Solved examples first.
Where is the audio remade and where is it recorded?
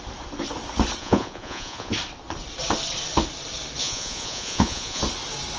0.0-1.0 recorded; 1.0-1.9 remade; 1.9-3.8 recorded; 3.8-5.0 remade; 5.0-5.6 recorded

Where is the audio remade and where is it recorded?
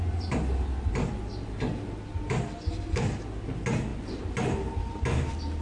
0.0-5.6 recorded